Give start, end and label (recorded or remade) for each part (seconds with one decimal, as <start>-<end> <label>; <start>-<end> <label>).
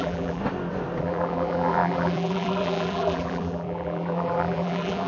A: 0.0-0.4 remade; 0.4-1.0 recorded; 1.0-5.1 remade